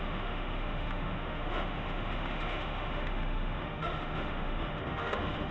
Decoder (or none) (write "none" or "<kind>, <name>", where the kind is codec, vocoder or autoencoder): autoencoder, DAC-VAE